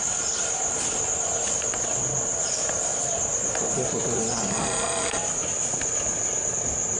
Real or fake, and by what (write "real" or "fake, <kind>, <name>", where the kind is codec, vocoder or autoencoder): real